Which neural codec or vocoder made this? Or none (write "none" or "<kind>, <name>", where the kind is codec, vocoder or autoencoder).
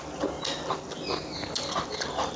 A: none